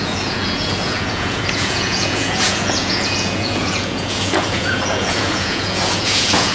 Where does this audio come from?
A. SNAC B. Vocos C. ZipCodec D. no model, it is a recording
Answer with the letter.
B